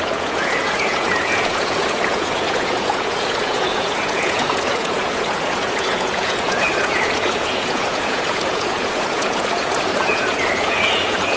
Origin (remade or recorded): remade